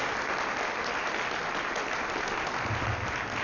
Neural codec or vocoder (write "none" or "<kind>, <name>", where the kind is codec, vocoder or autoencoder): none